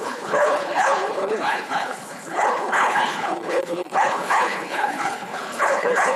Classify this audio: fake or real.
fake